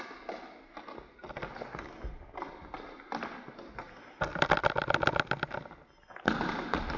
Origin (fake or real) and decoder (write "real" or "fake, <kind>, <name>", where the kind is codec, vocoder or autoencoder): real